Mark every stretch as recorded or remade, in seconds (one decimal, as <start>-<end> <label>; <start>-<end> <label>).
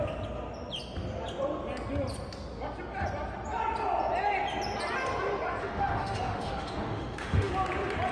0.0-5.6 recorded; 5.6-7.5 remade; 7.5-8.1 recorded